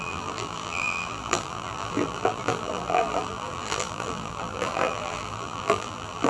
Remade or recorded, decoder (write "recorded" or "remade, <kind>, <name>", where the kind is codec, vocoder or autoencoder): remade, vocoder, BigVGAN v2